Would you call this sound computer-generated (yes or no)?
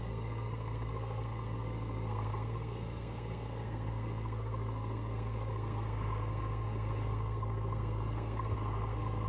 yes